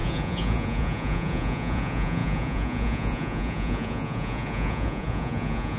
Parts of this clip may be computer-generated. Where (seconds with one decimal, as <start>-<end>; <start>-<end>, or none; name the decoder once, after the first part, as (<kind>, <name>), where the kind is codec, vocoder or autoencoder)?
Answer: 0.0-5.8 (vocoder, Vocos)